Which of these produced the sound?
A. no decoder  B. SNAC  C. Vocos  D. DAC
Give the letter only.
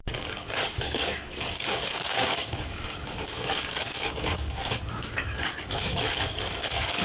D